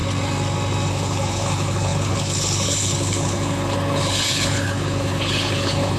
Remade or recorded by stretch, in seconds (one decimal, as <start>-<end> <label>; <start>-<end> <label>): 0.0-0.9 recorded; 0.9-6.0 remade